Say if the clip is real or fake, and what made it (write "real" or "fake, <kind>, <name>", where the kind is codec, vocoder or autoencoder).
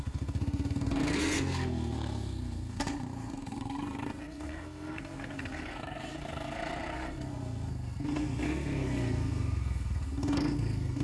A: fake, codec, SNAC